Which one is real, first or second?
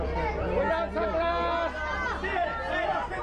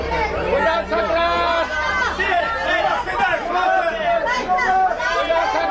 first